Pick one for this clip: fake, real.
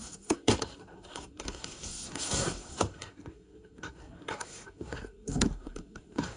fake